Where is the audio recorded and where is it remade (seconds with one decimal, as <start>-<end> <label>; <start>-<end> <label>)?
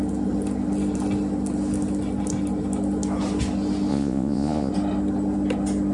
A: 0.0-3.9 recorded; 3.9-4.7 remade; 4.7-5.9 recorded